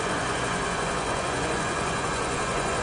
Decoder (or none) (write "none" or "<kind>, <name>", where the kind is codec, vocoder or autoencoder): vocoder, Vocos